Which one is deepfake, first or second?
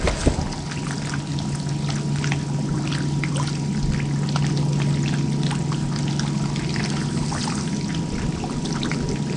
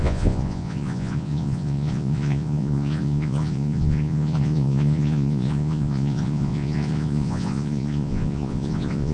second